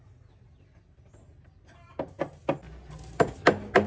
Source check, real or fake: real